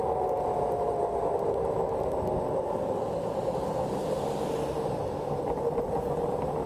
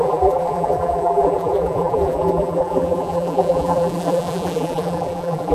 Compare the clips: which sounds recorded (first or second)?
first